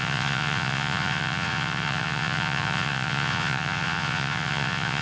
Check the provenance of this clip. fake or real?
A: fake